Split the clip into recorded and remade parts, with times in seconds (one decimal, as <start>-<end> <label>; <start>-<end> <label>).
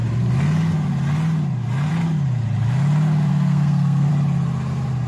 0.0-3.3 recorded; 3.3-4.1 remade; 4.1-5.1 recorded